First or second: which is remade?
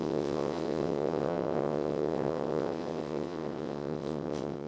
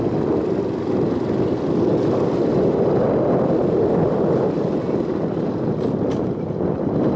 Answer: first